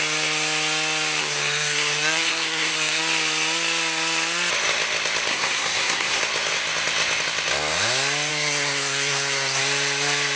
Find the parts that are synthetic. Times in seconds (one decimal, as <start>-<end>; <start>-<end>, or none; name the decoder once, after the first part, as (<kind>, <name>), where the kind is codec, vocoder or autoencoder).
1.2-3.0 (codec, SNAC); 5.3-6.2; 8.3-9.6